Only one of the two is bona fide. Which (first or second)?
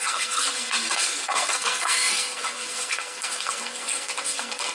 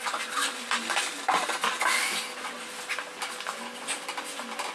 second